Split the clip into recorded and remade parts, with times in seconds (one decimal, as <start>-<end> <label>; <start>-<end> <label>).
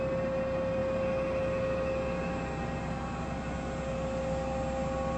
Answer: 0.0-5.2 recorded